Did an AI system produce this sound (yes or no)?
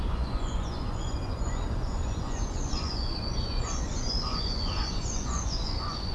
yes